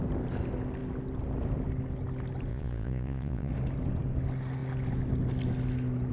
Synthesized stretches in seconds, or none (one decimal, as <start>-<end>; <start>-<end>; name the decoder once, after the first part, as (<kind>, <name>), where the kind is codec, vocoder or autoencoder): 2.5-3.5 (vocoder, Vocos)